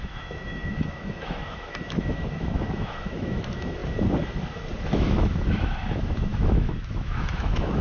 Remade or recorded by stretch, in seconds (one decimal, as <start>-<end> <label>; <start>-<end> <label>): 0.0-3.8 remade; 3.8-4.8 recorded; 4.8-7.8 remade